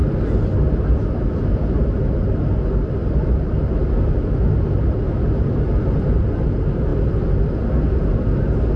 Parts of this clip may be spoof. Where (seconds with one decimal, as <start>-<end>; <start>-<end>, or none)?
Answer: none